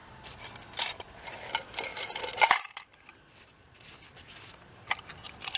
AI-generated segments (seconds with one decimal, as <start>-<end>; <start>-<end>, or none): 0.0-5.6